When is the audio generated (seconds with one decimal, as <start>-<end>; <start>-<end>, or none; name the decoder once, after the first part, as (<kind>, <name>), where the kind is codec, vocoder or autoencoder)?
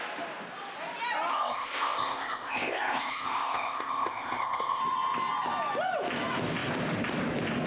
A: 1.3-4.8 (codec, ZipCodec)